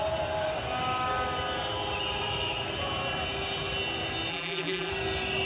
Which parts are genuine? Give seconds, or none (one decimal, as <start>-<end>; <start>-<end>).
0.0-4.3; 4.9-5.5